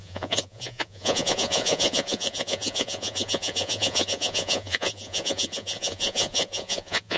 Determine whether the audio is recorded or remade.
remade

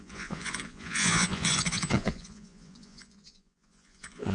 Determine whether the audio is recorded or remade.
remade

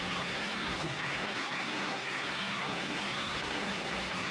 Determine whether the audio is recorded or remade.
remade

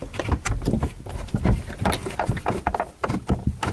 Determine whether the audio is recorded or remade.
recorded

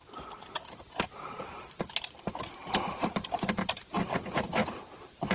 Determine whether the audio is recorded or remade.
remade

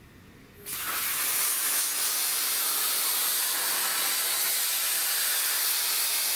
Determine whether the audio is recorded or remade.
recorded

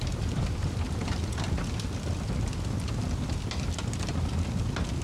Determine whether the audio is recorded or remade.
recorded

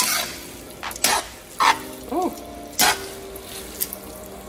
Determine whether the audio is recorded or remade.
recorded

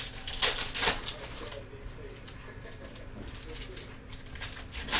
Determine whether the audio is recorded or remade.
recorded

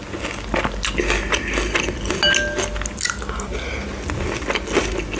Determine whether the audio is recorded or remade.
recorded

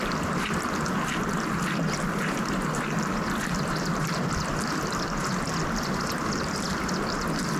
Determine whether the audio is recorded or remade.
remade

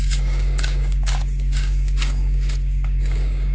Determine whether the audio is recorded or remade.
remade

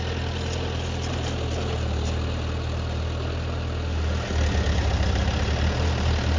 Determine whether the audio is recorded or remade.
recorded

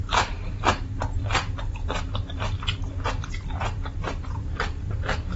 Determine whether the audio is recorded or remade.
recorded